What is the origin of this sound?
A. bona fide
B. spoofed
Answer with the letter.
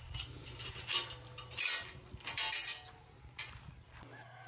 A